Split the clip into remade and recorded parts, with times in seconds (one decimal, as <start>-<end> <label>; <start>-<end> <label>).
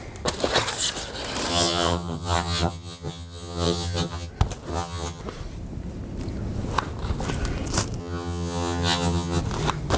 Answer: 0.0-1.5 recorded; 1.5-4.3 remade; 4.3-4.7 recorded; 4.7-5.2 remade; 5.2-8.0 recorded; 8.0-9.4 remade; 9.4-10.0 recorded